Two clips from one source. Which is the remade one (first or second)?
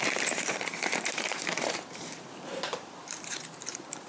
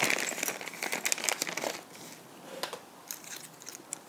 first